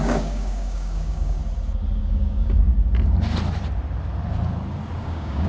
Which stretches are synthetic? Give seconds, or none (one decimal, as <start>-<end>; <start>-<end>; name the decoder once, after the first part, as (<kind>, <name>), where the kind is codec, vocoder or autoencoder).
0.0-1.4 (codec, DAC); 2.0-2.7; 5.0-5.5